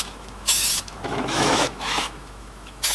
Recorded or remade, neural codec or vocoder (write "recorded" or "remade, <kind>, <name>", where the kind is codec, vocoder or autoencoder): remade, autoencoder, DAC-VAE